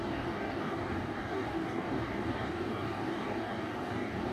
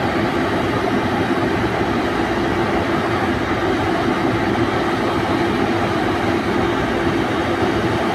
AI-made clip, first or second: first